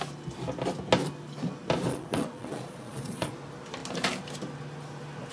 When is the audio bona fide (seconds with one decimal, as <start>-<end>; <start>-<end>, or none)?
0.0-1.9; 3.3-5.3